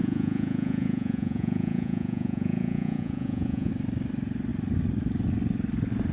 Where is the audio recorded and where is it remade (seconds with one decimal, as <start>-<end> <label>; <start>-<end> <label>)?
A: 0.0-3.7 remade; 3.7-6.1 recorded